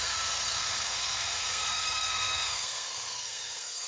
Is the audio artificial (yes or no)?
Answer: yes